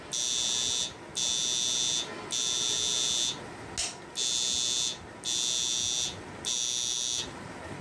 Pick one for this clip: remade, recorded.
recorded